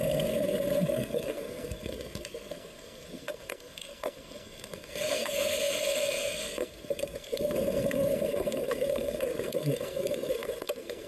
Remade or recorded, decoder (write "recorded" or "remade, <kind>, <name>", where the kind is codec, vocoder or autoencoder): remade, codec, SNAC